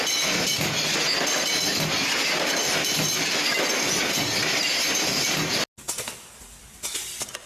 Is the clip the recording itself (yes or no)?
yes